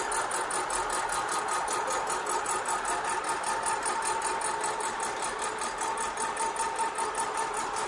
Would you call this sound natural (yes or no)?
yes